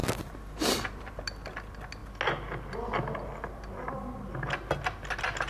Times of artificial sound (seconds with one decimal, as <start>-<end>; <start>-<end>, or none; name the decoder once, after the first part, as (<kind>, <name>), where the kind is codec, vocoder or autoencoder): 0.0-1.2 (vocoder, BigVGAN v2)